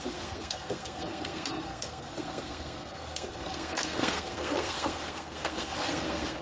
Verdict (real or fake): fake